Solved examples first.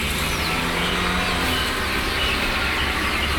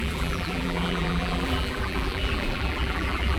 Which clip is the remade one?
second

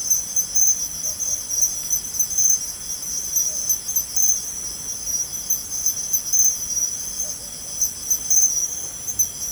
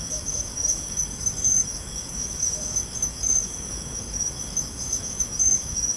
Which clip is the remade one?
second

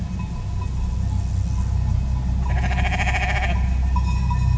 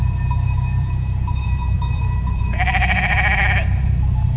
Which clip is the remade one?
second